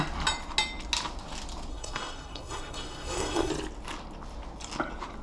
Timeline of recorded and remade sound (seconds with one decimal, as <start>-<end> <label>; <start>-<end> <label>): 0.0-1.7 recorded; 1.7-3.5 remade; 3.5-5.2 recorded